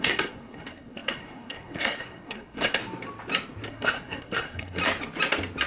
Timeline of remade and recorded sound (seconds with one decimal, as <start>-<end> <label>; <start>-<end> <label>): 0.0-2.8 remade; 2.8-3.7 recorded; 3.7-4.8 remade; 4.8-5.7 recorded

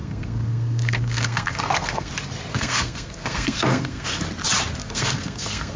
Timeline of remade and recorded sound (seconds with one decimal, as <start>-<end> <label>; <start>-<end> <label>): 0.0-2.1 remade; 2.1-2.5 recorded; 2.5-4.2 remade; 4.2-4.8 recorded; 4.8-5.8 remade

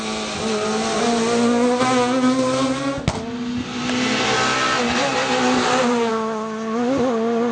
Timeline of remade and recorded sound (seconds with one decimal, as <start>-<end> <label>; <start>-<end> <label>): 0.0-7.5 recorded

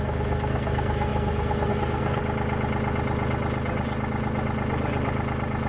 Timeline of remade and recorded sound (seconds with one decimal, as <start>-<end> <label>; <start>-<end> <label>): 0.0-2.2 remade; 2.2-5.7 recorded